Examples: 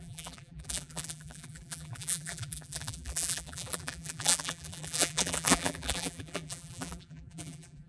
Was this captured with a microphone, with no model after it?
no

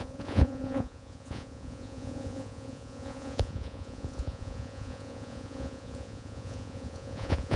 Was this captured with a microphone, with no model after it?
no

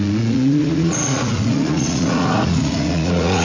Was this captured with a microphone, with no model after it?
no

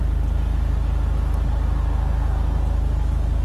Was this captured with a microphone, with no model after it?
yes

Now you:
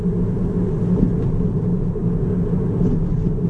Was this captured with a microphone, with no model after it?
yes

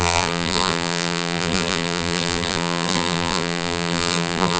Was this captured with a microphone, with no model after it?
no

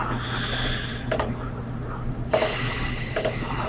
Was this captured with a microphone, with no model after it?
yes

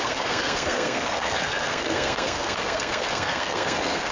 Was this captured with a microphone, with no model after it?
no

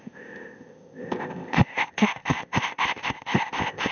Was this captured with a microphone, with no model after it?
no